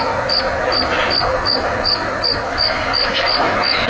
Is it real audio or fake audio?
real